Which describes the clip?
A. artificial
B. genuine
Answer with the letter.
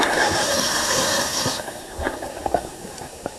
A